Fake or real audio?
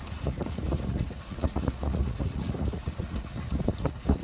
fake